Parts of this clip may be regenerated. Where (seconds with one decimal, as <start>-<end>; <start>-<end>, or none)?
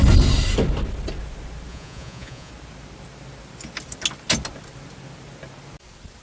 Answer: 1.7-2.5